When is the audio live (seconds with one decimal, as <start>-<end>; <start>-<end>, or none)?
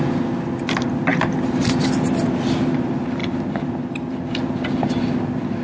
0.0-5.6